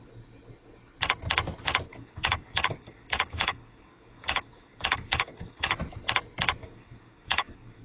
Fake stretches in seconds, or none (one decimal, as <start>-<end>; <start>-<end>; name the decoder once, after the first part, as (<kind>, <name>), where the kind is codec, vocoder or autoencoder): 1.9-5.8 (codec, DAC); 6.6-7.8